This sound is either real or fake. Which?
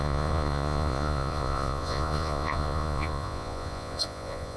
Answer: fake